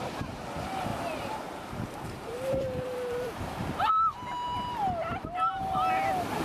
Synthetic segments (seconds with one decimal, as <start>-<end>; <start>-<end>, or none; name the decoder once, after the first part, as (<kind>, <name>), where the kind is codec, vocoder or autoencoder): 0.9-3.9 (vocoder, BigVGAN v2)